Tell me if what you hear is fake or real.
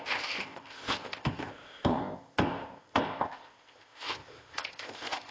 fake